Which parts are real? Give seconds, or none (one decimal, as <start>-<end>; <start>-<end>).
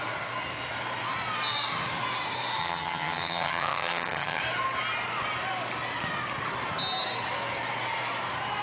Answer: 0.0-2.6; 4.4-8.6